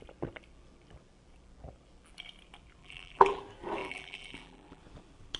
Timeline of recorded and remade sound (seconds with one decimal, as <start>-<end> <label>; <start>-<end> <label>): 0.0-2.8 recorded; 2.8-3.4 remade; 3.4-3.8 recorded; 3.8-4.8 remade; 4.8-5.4 recorded